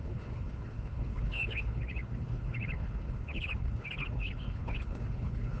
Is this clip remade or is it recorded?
remade